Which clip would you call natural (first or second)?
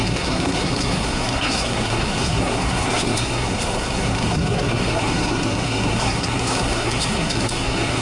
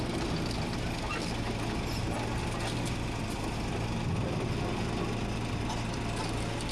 second